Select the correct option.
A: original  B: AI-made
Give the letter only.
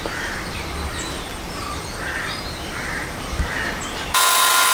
A